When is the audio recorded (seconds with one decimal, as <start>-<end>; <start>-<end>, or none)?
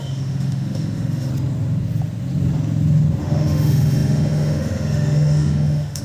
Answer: 1.3-3.2